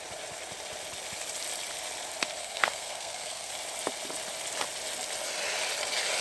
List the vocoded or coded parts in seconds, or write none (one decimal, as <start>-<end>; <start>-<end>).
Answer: 2.4-3.5